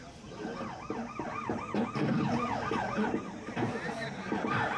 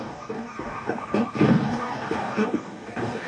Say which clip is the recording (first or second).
first